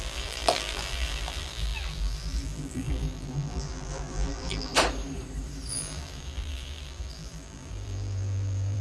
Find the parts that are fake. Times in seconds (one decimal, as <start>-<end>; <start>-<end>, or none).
0.0-4.7; 5.7-8.8